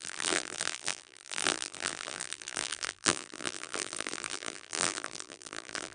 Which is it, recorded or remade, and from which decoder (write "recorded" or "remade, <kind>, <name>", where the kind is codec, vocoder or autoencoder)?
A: remade, vocoder, BigVGAN v2